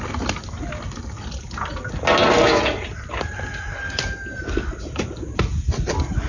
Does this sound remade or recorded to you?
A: recorded